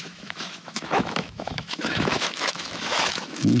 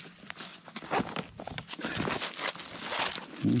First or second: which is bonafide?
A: second